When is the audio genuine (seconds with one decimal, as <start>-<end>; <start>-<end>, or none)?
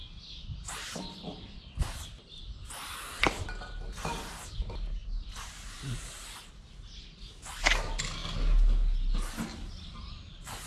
0.0-10.7